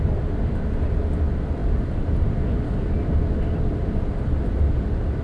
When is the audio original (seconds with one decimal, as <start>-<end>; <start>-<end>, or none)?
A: 0.0-5.2